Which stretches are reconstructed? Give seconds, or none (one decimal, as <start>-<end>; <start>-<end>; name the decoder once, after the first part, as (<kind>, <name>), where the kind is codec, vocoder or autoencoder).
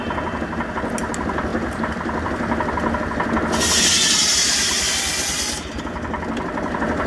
none